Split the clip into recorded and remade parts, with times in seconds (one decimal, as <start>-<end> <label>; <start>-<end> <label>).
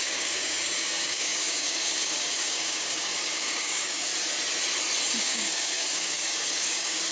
0.0-4.1 remade; 4.1-5.2 recorded; 5.2-7.1 remade